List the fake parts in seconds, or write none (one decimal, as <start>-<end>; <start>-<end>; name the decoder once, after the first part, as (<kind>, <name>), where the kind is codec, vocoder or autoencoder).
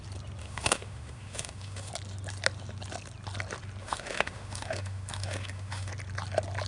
0.4-1.9 (autoencoder, DAC-VAE); 3.8-5.9